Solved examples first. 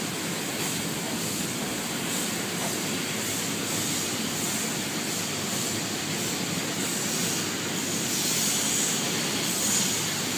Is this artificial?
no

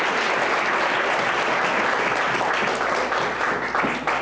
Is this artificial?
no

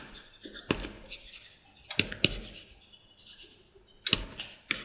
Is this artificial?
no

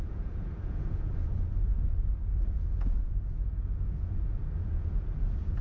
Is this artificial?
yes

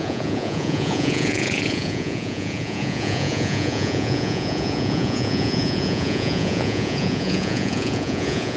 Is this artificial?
yes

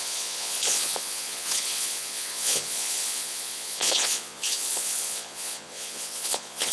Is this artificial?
yes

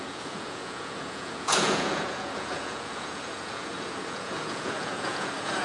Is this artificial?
yes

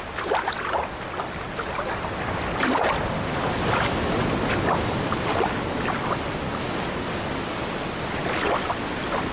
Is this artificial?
no